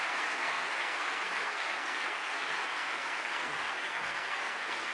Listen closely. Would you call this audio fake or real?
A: fake